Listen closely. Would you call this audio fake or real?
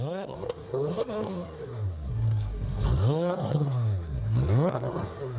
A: fake